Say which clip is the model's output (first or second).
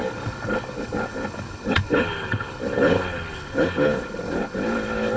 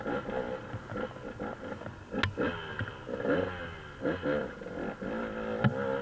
first